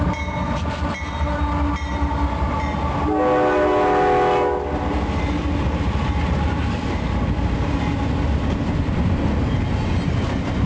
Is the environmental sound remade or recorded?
recorded